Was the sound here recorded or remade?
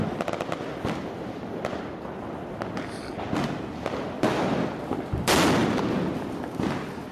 recorded